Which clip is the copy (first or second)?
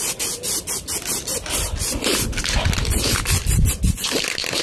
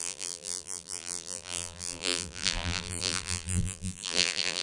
second